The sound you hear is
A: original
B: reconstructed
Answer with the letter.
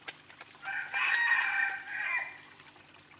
A